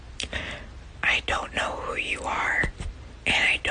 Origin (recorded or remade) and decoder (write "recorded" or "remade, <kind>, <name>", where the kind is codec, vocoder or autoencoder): recorded